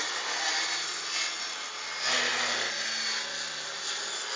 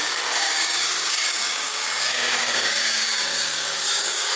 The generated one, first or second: second